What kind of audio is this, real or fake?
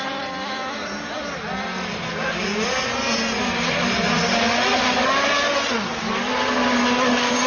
real